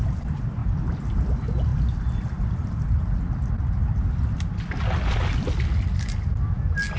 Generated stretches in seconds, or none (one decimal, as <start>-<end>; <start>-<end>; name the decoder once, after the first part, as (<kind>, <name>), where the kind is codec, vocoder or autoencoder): none